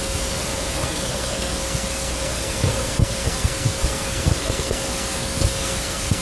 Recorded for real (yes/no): no